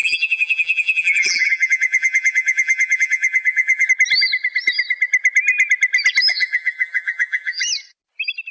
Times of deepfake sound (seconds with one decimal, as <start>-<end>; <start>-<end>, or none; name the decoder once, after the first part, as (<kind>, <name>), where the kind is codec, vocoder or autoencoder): 0.0-3.9 (vocoder, BigVGAN v2); 6.3-7.6